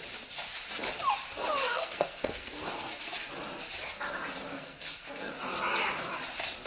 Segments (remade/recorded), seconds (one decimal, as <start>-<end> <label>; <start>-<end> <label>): 0.0-1.6 recorded; 1.6-3.3 remade; 3.3-4.5 recorded; 4.5-5.3 remade; 5.3-6.7 recorded